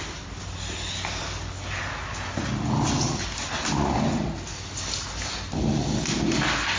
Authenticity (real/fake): real